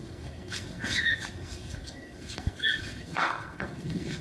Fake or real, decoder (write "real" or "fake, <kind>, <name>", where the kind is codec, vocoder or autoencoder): fake, codec, SNAC